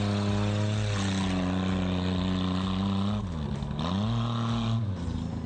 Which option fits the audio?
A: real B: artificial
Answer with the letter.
A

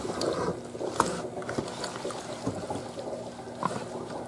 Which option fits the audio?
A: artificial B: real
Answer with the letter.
B